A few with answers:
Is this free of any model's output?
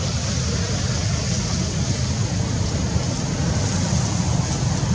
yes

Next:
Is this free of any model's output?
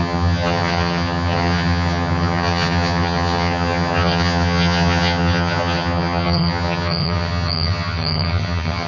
no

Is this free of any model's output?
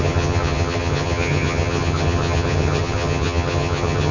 no